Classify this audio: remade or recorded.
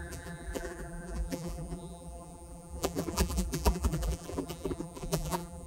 remade